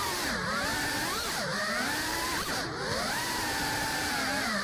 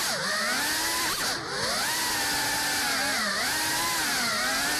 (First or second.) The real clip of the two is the second